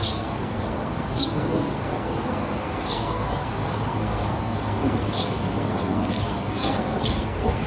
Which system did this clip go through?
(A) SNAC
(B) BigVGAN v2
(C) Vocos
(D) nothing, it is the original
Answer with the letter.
A